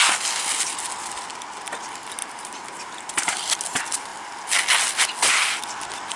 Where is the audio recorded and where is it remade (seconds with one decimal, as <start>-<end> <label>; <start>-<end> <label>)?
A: 0.0-2.2 recorded; 2.2-3.5 remade; 3.5-6.2 recorded

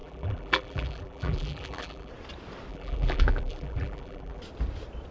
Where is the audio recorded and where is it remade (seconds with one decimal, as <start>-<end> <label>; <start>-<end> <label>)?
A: 0.0-2.1 remade; 2.1-2.7 recorded; 2.7-4.4 remade; 4.4-5.1 recorded

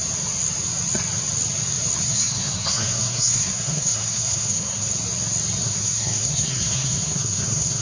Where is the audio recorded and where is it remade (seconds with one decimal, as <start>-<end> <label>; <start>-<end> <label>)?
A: 0.0-2.0 recorded; 2.0-4.9 remade; 4.9-5.6 recorded; 5.6-7.8 remade

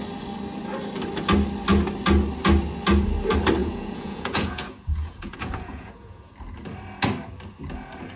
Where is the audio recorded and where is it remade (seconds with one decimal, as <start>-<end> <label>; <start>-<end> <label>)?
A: 0.0-3.6 recorded; 3.6-6.3 remade; 6.3-8.2 recorded

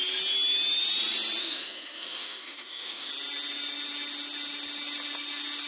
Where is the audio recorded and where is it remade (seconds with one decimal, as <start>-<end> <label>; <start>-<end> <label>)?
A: 0.0-1.4 recorded; 1.4-3.1 remade; 3.1-5.7 recorded